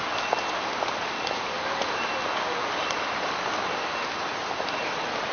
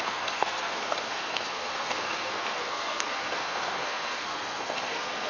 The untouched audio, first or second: first